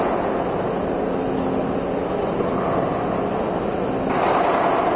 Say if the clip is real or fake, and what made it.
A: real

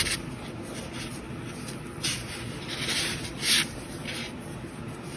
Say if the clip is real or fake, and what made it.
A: real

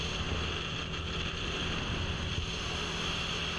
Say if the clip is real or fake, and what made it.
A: real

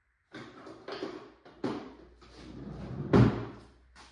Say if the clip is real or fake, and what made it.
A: real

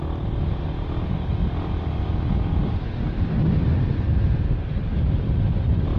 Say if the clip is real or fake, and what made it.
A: real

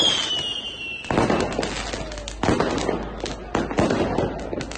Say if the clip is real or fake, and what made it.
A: real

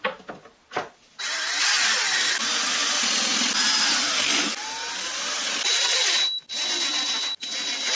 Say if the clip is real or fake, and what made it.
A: real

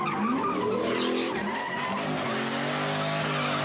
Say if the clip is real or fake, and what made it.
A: real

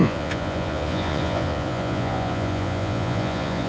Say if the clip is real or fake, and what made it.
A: fake, vocoder, Vocos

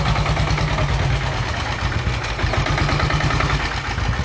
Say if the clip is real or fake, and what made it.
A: real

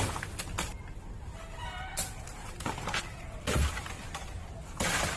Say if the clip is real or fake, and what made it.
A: real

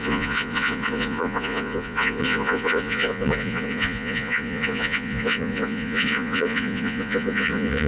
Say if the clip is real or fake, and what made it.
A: fake, vocoder, Vocos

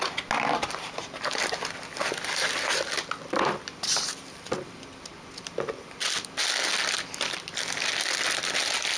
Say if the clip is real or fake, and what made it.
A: real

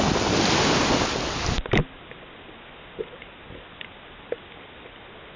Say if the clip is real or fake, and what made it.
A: real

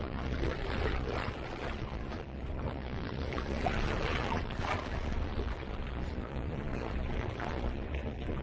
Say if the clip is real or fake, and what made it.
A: fake, vocoder, Vocos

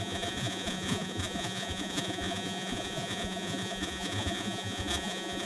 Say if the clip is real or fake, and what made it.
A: fake, vocoder, Vocos